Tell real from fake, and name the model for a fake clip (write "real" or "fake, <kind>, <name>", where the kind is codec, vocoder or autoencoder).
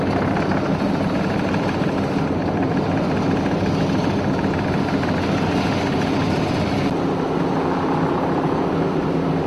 real